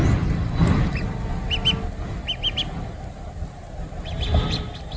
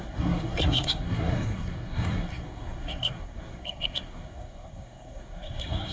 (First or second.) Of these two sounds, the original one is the first